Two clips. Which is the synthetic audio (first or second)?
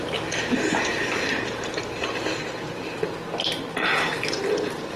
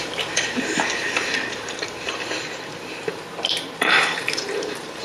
second